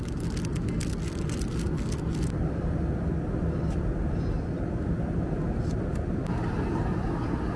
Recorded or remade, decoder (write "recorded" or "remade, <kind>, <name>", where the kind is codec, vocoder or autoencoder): recorded